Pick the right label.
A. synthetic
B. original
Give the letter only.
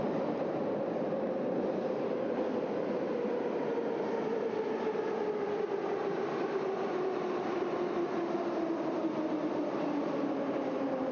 B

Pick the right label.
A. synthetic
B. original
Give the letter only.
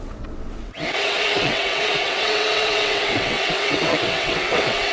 A